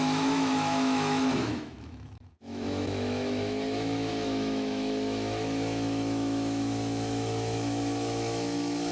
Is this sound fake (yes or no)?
yes